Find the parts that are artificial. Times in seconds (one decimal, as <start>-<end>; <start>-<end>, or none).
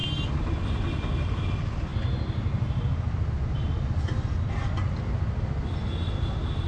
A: none